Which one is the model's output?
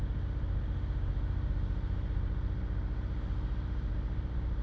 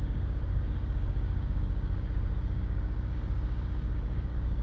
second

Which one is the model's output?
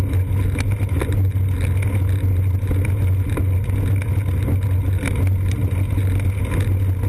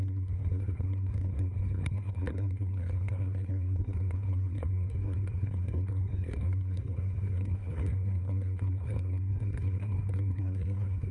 second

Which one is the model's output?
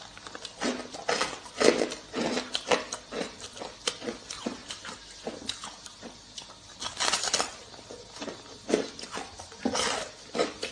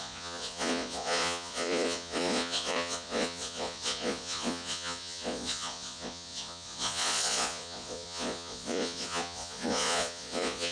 second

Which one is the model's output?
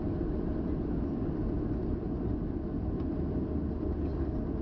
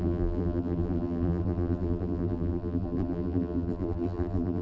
second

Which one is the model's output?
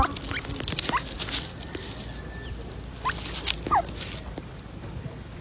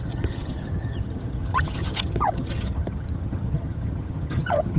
second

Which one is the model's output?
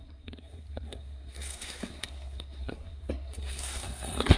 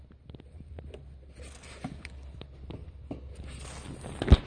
first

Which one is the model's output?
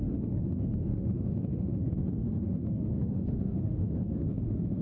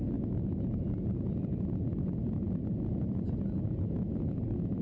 first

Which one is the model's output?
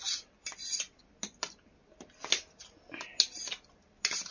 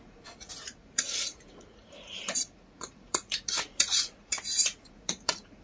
second